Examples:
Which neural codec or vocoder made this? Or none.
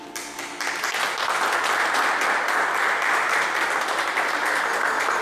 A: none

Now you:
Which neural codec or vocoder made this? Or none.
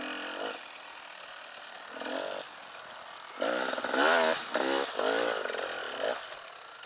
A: none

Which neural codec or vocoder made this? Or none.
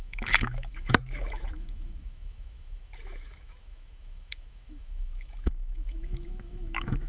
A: autoencoder, DAC-VAE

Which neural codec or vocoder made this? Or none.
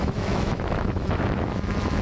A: autoencoder, DAC-VAE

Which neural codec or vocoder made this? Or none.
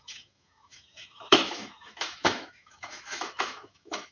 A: autoencoder, DAC-VAE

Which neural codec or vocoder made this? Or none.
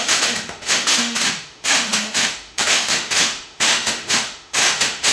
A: autoencoder, DAC-VAE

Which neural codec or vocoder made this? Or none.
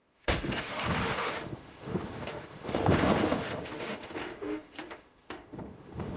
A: autoencoder, DAC-VAE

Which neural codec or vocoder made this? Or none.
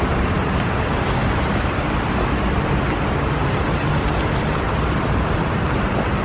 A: none